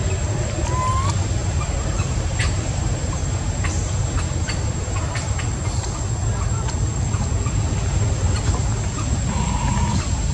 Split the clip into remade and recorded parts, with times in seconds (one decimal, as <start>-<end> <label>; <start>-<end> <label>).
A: 0.0-1.4 recorded; 1.4-5.4 remade; 5.4-10.3 recorded